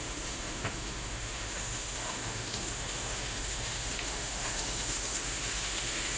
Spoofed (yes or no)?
yes